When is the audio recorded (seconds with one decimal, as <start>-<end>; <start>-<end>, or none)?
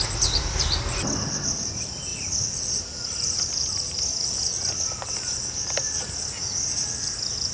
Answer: 0.0-7.5